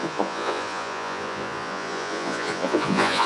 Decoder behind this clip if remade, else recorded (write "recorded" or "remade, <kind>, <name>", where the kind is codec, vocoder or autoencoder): remade, vocoder, Vocos